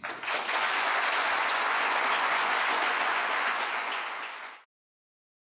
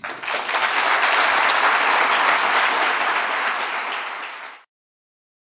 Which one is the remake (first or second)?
first